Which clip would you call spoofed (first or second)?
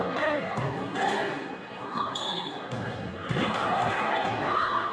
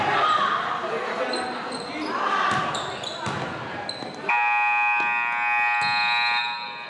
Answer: first